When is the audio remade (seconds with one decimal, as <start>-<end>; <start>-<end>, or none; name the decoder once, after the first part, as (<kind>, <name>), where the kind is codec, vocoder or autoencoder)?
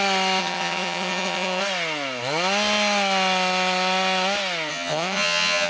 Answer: 0.4-1.6 (vocoder, HiFi-GAN); 4.7-5.7